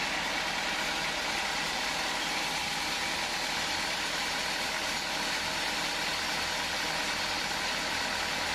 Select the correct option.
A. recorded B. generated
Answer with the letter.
A